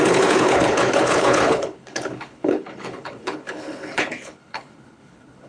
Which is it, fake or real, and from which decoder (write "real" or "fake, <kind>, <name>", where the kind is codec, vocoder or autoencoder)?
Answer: fake, codec, HILCodec